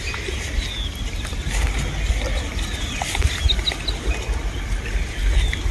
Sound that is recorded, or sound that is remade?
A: recorded